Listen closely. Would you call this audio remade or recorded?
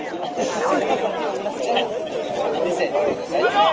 recorded